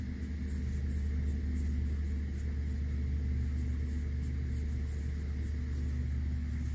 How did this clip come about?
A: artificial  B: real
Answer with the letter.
B